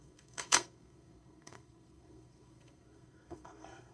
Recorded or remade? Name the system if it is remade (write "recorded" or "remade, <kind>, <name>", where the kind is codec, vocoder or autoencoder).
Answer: remade, codec, SNAC